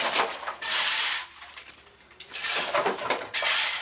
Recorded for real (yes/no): no